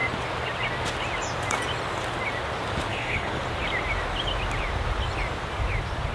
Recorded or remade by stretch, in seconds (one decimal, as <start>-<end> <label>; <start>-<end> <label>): 0.0-2.9 recorded; 2.9-3.4 remade; 3.4-6.1 recorded